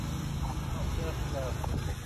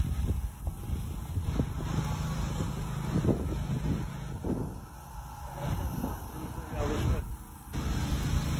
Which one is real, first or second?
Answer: second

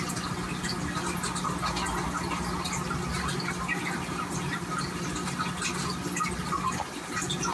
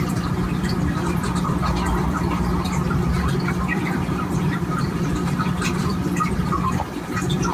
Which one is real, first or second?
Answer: first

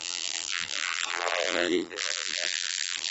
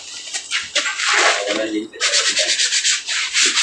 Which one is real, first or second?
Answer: second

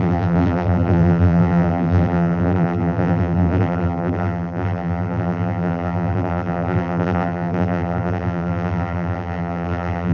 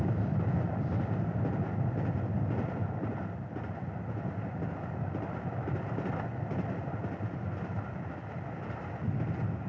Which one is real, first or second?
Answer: second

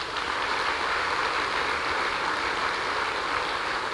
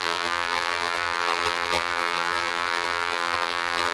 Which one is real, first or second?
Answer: first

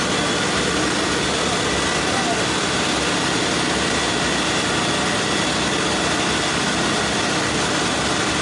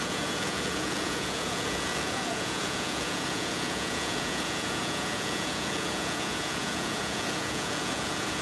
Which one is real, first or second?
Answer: first